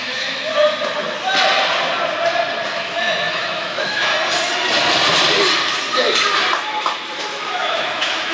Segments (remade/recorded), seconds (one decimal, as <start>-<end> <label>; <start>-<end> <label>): 0.0-0.5 remade; 0.5-2.7 recorded; 2.7-4.1 remade; 4.1-7.2 recorded; 7.2-8.3 remade